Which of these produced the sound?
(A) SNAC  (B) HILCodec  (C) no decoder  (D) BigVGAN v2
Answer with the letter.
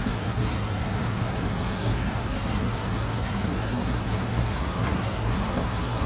A